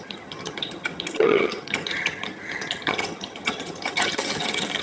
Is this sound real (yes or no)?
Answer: no